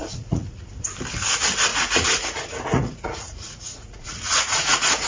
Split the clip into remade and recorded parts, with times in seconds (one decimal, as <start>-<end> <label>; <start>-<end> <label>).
0.0-0.7 remade; 0.7-1.7 recorded; 1.7-5.1 remade